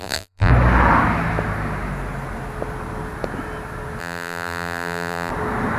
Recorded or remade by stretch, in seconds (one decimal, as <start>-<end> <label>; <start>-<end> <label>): 0.0-0.5 remade; 0.5-4.0 recorded; 4.0-5.3 remade; 5.3-5.8 recorded